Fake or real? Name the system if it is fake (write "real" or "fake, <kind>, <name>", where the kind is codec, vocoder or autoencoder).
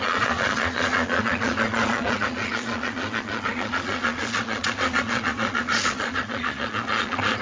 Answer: fake, vocoder, Vocos